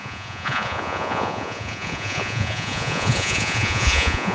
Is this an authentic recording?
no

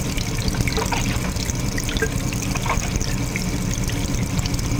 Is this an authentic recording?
yes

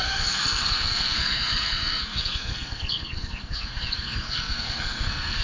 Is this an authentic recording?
no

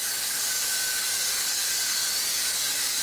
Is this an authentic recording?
no